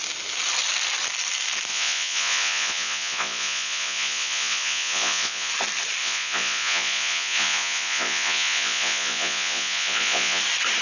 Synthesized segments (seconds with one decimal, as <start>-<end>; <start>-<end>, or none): 1.7-5.5; 6.0-10.4